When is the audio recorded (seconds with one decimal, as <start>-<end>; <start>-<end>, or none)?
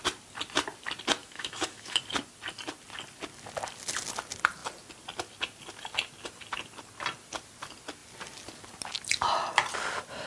0.0-1.2; 2.0-10.3